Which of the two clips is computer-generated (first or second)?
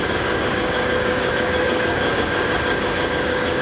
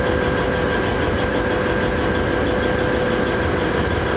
first